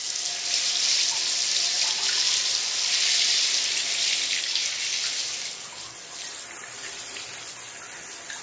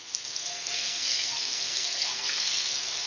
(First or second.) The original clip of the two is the first